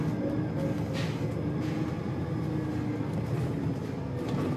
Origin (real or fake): real